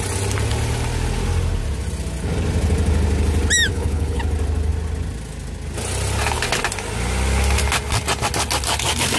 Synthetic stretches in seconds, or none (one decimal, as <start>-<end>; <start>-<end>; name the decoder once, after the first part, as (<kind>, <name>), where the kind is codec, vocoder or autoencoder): 3.7-4.2 (codec, HILCodec)